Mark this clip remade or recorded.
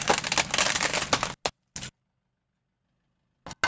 recorded